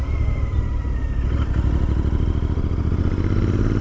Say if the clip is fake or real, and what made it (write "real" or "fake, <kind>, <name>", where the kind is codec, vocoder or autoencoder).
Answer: real